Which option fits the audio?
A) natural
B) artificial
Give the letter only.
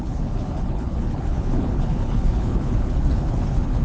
B